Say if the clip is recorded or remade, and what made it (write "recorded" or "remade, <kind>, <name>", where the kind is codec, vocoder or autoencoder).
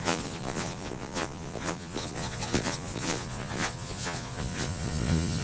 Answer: remade, vocoder, Vocos